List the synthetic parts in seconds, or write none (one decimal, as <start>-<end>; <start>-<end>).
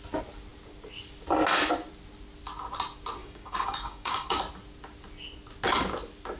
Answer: 3.2-4.4